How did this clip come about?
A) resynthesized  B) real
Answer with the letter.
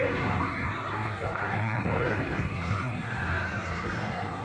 A